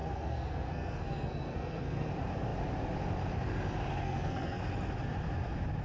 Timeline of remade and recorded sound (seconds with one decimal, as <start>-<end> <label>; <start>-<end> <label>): 0.0-2.1 remade; 2.1-4.0 recorded; 4.0-4.6 remade; 4.6-5.8 recorded